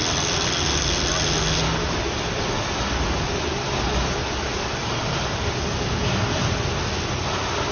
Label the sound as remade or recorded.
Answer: recorded